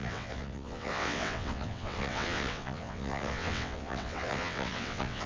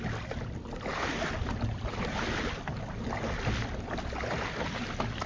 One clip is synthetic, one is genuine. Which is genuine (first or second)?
second